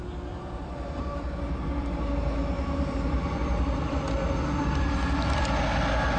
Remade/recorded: recorded